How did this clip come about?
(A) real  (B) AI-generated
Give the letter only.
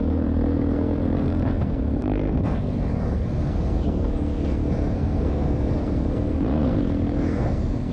B